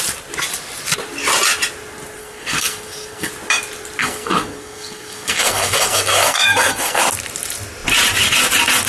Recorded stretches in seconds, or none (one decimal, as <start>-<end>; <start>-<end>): 0.0-2.2; 3.3-4.0; 7.0-8.9

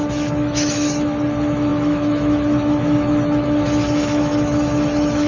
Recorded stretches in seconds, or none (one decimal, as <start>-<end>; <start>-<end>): none

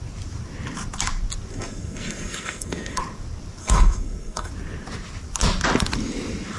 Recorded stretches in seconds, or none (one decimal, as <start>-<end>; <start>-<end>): 0.0-1.5; 3.0-3.6; 4.5-6.6

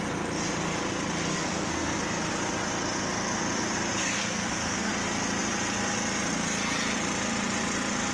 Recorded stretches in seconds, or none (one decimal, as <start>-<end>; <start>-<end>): 0.0-1.3; 2.0-4.0; 4.9-8.1

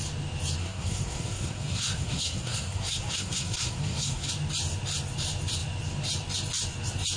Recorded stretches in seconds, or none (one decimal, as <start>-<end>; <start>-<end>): 0.0-0.6; 4.3-7.2

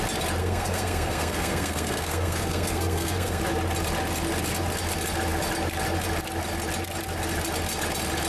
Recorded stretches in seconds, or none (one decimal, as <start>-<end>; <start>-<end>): 0.0-0.4; 3.4-8.3

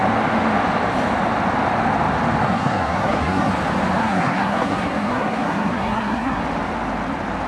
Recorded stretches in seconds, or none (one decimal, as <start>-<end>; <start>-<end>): 0.0-2.4; 3.5-4.0; 6.4-7.5